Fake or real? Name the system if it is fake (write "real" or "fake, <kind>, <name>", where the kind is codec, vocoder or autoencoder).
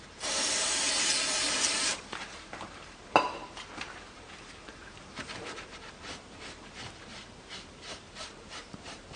fake, vocoder, BigVGAN v2